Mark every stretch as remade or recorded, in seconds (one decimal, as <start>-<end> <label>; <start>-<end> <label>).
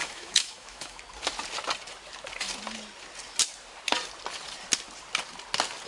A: 0.0-1.0 remade; 1.0-5.9 recorded